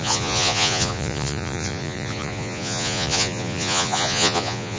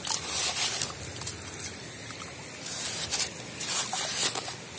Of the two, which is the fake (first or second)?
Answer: first